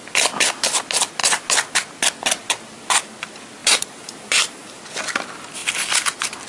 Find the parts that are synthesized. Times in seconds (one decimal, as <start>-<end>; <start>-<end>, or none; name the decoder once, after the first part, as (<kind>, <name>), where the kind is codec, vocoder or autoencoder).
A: 3.6-4.8 (vocoder, BigVGAN v2)